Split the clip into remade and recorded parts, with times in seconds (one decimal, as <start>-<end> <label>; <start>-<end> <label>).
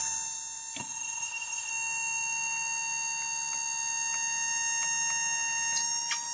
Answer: 0.0-0.8 recorded; 0.8-1.7 remade; 1.7-6.3 recorded